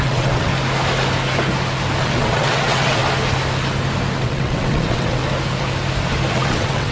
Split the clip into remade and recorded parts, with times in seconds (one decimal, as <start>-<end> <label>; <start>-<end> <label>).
0.0-0.5 remade; 0.5-2.0 recorded; 2.0-3.0 remade; 3.0-4.2 recorded; 4.2-5.2 remade; 5.2-6.3 recorded; 6.3-6.9 remade